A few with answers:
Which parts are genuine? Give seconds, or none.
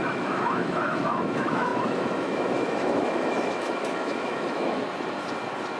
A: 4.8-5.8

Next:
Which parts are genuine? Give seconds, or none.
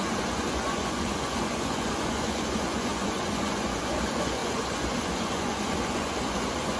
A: none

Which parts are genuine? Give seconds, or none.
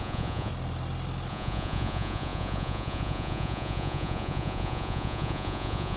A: 0.5-1.3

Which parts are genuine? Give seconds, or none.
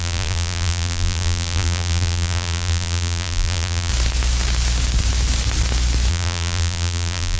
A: 3.9-6.1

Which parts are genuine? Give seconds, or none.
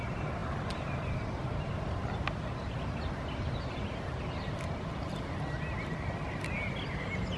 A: 0.0-7.4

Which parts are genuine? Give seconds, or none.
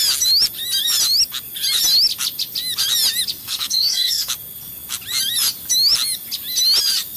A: 0.0-3.4; 4.3-7.2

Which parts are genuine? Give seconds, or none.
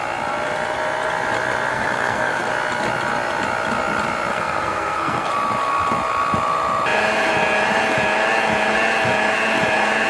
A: 0.0-1.7; 2.5-4.3; 5.3-10.1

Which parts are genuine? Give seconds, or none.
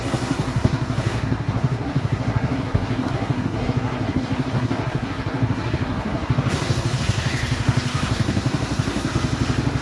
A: 9.1-9.8